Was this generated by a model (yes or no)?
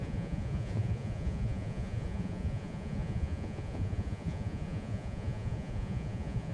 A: yes